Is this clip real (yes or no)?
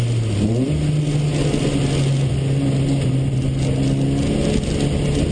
yes